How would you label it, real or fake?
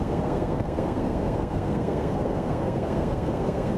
fake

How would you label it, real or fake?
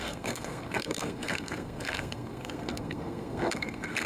fake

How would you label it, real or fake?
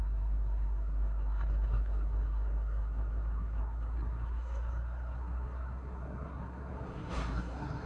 fake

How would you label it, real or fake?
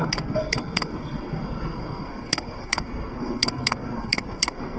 fake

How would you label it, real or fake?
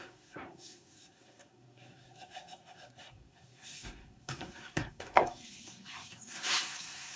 fake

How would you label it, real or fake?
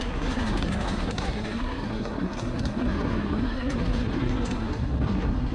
fake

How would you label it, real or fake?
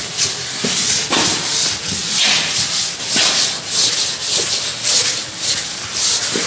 real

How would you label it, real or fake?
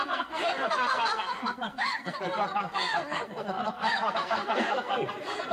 fake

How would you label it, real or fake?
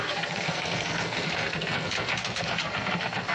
fake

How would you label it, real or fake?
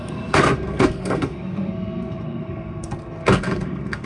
fake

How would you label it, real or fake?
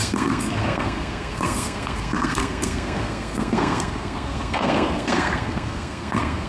fake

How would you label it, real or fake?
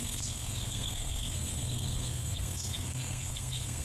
fake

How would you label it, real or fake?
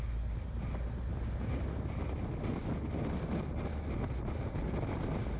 real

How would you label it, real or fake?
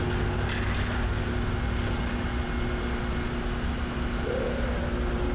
real